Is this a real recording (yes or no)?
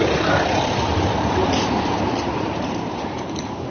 no